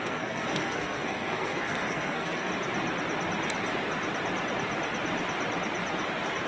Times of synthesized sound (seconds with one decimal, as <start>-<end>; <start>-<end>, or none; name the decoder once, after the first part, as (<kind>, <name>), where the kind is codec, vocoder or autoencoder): 0.0-2.5 (codec, SNAC)